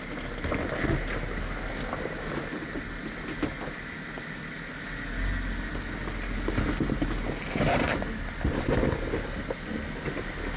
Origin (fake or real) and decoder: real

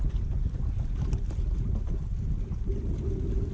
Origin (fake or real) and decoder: real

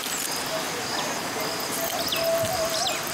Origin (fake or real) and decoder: real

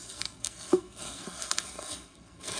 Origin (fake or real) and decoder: fake, codec, SNAC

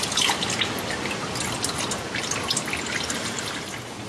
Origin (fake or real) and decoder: real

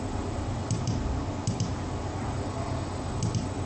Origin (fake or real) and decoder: real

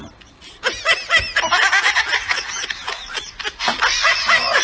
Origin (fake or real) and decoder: real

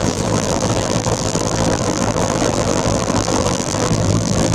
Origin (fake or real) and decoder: fake, vocoder, BigVGAN v2